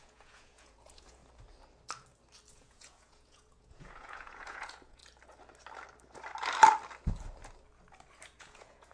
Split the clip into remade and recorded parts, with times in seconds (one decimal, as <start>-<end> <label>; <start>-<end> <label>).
0.0-1.2 remade; 1.2-2.5 recorded; 2.5-5.0 remade; 5.0-8.4 recorded; 8.4-8.9 remade